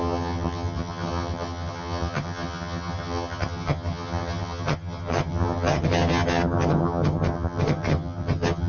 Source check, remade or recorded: remade